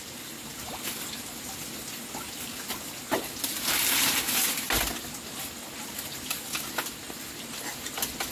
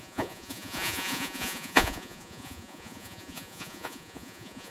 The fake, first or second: second